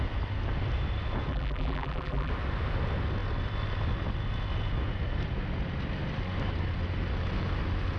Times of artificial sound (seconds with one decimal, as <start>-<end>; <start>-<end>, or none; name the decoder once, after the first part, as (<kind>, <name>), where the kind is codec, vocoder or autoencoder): 1.3-2.3 (vocoder, BigVGAN v2)